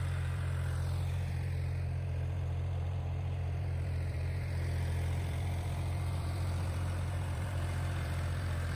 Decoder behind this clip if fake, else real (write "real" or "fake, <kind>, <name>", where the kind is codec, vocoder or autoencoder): fake, vocoder, BigVGAN v2